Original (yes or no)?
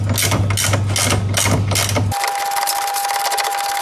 yes